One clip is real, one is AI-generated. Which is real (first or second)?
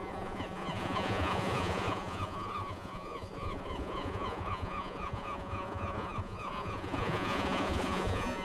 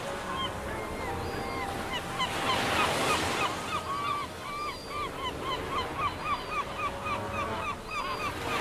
second